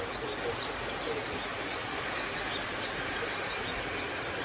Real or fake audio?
real